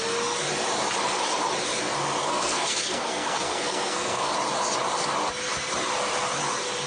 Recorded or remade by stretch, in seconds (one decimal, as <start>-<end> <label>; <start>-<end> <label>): 0.0-2.2 recorded; 2.2-4.3 remade; 4.3-6.9 recorded